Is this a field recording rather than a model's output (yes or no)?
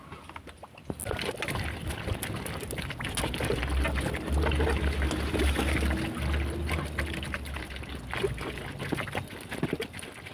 yes